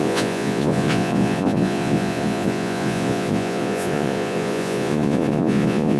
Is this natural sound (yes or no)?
no